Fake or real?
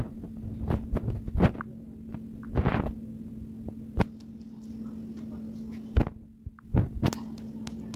real